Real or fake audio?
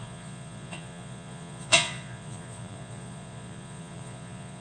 fake